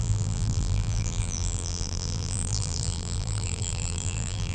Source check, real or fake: fake